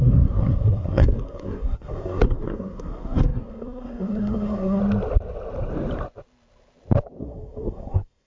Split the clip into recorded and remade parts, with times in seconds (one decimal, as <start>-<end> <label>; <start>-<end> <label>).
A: 0.0-4.8 remade; 4.8-7.2 recorded; 7.2-8.3 remade